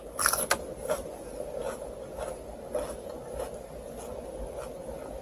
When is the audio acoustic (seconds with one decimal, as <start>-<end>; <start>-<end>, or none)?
0.0-5.2